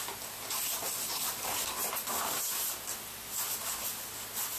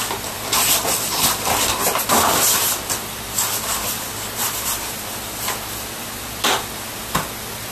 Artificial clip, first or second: second